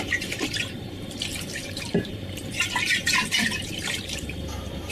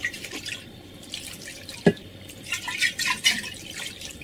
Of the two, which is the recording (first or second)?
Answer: second